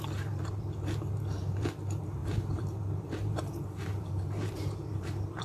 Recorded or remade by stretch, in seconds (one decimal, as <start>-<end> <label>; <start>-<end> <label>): 0.0-5.4 remade